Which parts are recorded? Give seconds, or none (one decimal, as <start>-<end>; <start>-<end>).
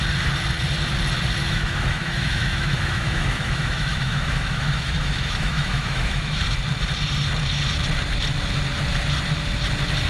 0.0-1.4; 6.4-10.1